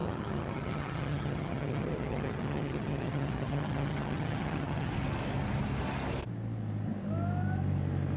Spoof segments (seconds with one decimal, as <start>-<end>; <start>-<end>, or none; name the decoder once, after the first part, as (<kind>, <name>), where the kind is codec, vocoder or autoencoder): 0.0-4.9 (vocoder, HiFi-GAN)